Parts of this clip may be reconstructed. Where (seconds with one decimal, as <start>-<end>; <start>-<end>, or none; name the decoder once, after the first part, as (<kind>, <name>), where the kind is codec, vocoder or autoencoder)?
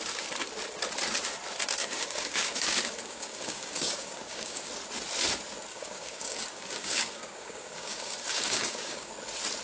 1.8-4.7 (codec, DAC); 5.7-9.1